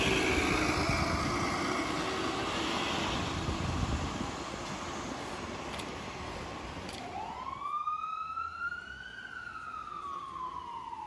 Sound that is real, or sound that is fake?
real